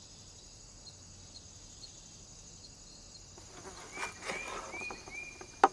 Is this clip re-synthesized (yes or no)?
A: no